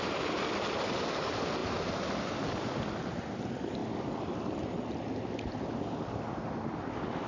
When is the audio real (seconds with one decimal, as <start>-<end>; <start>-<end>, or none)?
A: 0.0-7.3